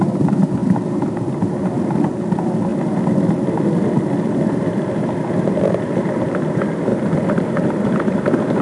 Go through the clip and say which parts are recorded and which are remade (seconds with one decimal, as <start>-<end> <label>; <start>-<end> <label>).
0.0-2.7 remade; 2.7-4.2 recorded; 4.2-6.9 remade; 6.9-7.7 recorded; 7.7-8.6 remade